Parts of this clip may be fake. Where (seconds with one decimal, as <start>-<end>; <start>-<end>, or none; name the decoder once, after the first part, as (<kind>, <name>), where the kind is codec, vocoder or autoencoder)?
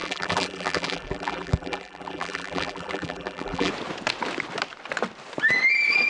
0.0-3.7 (vocoder, BigVGAN v2)